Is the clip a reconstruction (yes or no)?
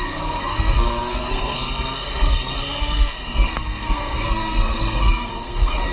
yes